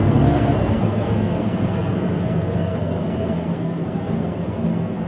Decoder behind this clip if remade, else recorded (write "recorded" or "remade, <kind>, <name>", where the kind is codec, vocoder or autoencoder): remade, codec, SNAC